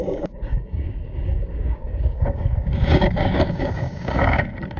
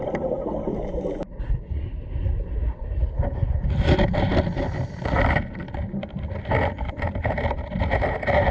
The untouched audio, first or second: second